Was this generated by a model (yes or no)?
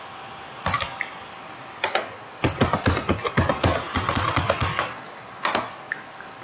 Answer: no